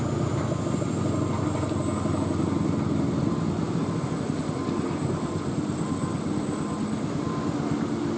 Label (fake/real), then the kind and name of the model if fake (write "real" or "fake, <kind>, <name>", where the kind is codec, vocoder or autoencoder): real